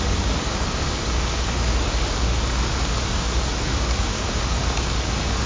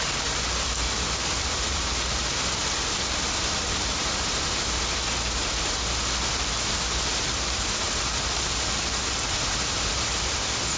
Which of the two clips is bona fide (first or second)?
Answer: second